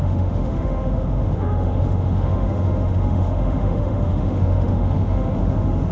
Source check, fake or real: fake